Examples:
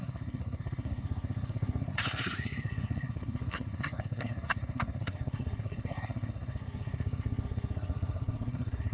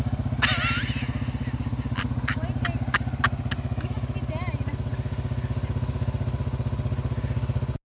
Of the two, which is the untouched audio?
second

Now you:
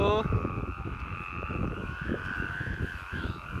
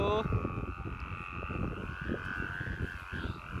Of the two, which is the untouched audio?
second